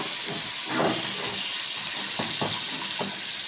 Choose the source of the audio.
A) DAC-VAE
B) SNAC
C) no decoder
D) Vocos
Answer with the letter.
C